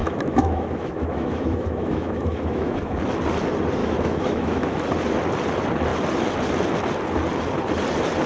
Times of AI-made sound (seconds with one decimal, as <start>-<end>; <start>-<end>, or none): 0.0-3.0; 3.8-4.8